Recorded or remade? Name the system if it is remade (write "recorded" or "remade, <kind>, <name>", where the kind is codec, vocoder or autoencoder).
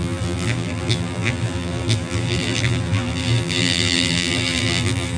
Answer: remade, vocoder, BigVGAN v2